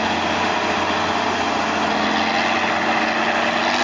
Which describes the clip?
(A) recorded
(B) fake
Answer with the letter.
A